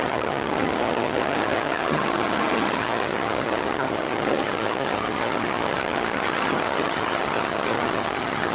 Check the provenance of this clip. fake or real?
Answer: fake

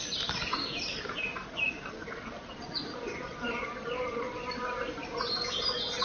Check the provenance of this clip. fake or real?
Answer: real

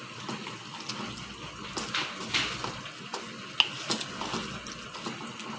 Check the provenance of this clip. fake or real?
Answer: real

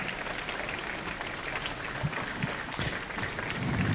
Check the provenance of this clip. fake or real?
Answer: real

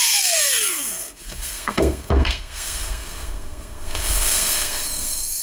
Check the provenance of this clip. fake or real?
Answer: fake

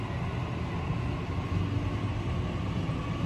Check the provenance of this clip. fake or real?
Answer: real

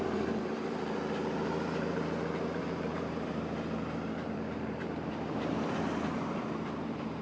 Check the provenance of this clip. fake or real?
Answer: fake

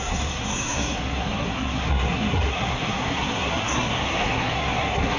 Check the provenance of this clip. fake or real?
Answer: fake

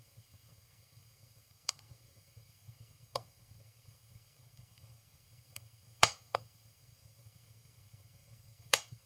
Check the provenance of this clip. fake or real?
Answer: fake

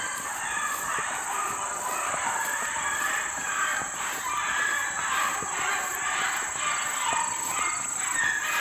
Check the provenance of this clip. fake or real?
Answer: real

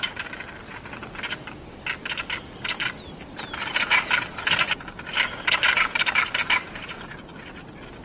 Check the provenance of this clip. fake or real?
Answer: real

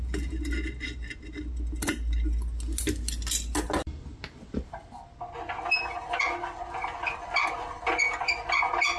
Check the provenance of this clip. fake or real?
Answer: real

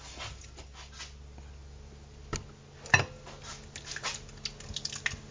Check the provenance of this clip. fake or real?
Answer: real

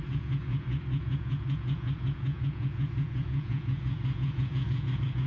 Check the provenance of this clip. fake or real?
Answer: fake